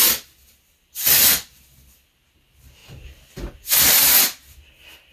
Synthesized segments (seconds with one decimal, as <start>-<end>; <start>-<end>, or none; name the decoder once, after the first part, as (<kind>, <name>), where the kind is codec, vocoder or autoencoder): none